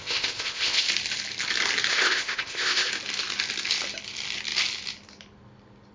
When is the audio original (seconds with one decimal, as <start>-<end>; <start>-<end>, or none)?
0.9-1.9; 2.9-5.9